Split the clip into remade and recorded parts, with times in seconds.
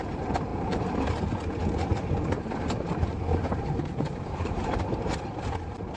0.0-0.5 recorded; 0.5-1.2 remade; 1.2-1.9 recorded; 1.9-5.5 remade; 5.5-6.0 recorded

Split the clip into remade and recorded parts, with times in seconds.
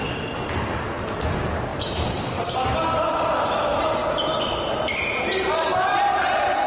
0.0-1.7 recorded; 1.7-2.4 remade; 2.4-6.7 recorded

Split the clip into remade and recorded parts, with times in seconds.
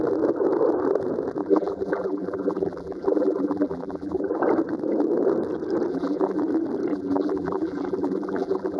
0.0-1.4 recorded; 1.4-4.4 remade; 4.4-5.9 recorded; 5.9-6.4 remade; 6.4-6.9 recorded; 6.9-8.8 remade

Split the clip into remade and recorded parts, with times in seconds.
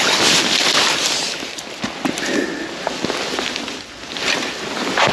0.0-5.1 recorded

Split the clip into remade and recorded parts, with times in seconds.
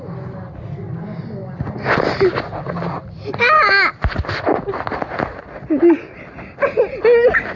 0.0-3.0 recorded; 3.0-3.6 remade; 3.6-7.6 recorded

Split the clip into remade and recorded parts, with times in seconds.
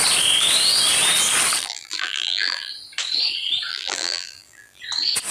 0.0-1.6 recorded; 1.6-2.7 remade; 2.7-3.7 recorded; 3.7-4.8 remade; 4.8-5.3 recorded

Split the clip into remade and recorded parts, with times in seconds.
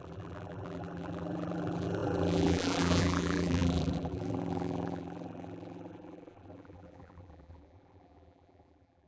0.0-9.1 remade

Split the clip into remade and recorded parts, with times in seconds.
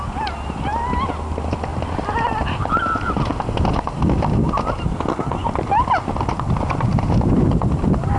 0.0-8.2 recorded